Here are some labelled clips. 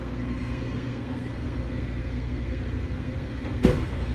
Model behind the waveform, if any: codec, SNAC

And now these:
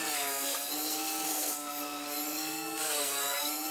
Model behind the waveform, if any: codec, SNAC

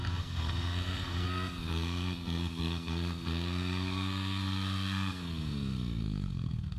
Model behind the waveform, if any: codec, SNAC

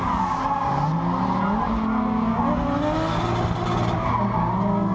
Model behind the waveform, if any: none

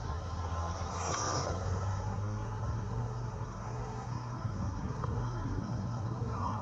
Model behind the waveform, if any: codec, SNAC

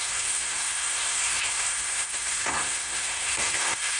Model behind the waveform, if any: codec, SNAC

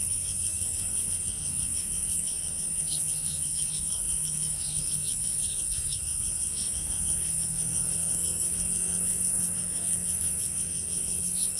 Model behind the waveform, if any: codec, SNAC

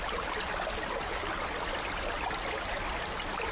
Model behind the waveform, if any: none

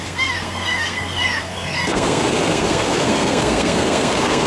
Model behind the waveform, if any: codec, SNAC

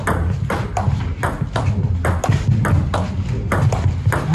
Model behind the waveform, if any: none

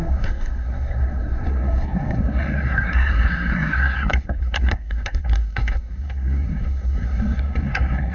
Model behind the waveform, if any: codec, SNAC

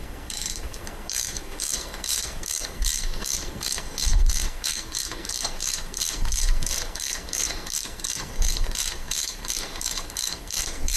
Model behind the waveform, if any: codec, SNAC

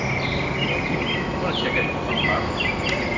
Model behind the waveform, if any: none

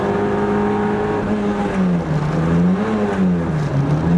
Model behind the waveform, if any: none